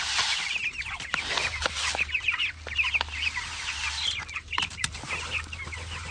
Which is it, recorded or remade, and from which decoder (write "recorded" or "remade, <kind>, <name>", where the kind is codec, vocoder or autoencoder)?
recorded